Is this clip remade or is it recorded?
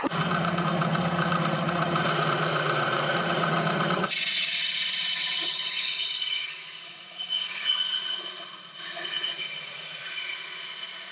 remade